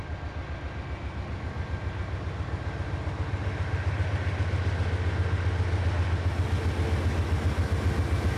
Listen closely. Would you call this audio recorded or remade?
recorded